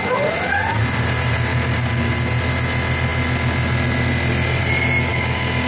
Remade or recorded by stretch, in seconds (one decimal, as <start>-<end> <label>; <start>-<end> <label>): 0.0-1.5 recorded; 1.5-2.1 remade; 2.1-5.1 recorded; 5.1-5.7 remade